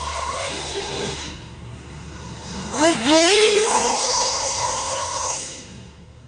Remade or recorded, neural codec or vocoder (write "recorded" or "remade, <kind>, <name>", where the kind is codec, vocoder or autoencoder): remade, codec, SNAC